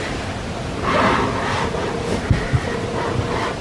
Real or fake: real